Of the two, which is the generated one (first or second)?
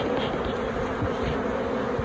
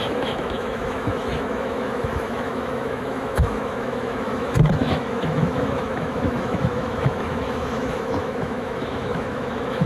second